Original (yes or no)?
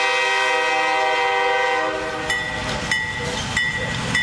yes